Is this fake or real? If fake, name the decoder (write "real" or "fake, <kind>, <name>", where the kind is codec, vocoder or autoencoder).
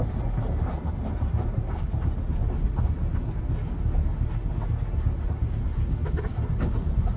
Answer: real